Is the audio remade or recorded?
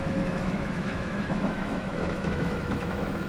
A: remade